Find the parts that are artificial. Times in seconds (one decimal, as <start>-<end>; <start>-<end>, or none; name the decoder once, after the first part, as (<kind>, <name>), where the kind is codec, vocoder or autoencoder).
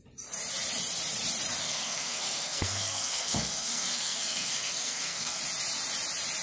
1.6-5.4 (codec, SNAC)